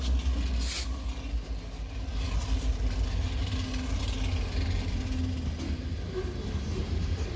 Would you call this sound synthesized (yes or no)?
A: no